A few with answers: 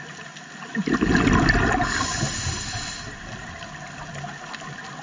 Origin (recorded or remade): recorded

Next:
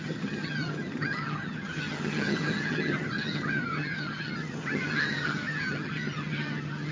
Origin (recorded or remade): remade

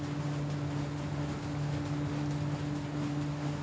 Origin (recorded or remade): recorded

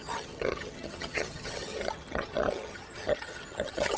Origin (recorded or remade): remade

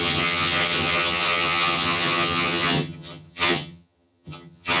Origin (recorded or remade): remade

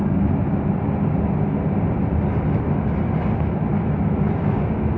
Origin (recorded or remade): recorded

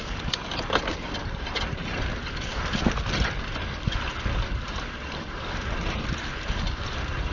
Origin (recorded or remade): recorded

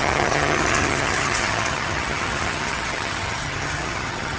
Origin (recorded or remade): remade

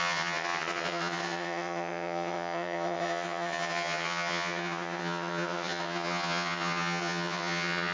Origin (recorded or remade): remade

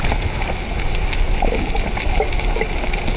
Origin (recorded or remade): recorded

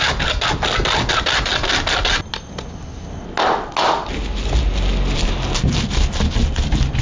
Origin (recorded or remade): recorded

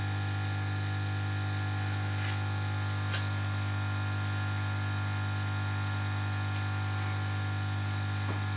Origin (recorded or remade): recorded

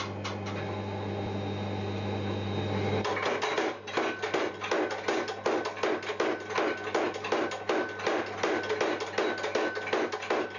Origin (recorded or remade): recorded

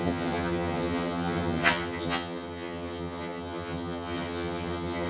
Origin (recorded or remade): remade